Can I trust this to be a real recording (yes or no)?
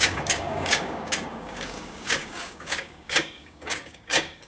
no